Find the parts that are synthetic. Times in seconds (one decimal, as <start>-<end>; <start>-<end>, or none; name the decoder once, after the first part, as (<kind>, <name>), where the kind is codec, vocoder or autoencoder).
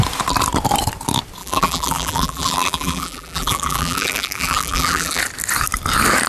1.4-5.2 (vocoder, BigVGAN v2)